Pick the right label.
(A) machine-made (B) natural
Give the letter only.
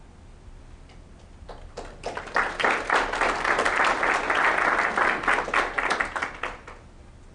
B